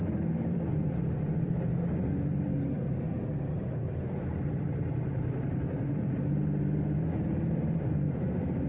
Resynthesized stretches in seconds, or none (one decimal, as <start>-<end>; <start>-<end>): 0.0-8.7